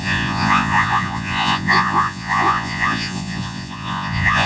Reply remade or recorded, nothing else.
remade